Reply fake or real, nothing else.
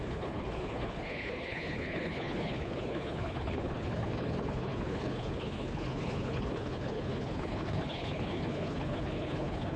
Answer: fake